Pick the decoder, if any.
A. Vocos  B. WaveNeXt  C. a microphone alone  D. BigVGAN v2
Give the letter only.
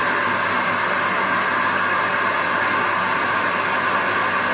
C